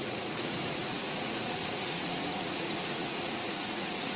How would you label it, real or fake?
fake